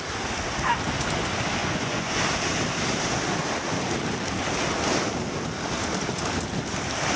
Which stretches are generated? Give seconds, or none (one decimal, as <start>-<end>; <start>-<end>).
1.6-2.2